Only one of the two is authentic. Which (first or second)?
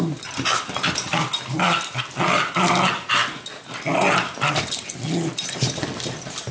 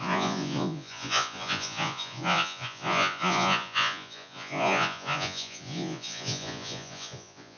first